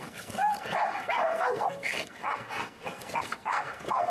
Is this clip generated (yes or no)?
yes